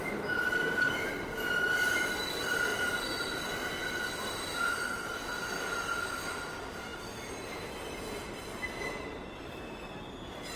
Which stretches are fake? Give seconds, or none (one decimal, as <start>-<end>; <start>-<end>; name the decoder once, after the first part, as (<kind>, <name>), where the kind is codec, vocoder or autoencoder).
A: 6.9-7.5 (vocoder, BigVGAN v2)